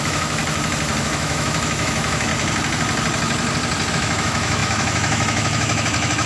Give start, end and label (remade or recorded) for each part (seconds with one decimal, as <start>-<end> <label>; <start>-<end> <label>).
0.0-0.4 remade; 0.4-1.0 recorded; 1.0-2.3 remade; 2.3-3.9 recorded; 3.9-6.3 remade